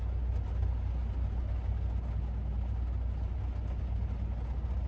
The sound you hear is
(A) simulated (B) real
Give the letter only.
B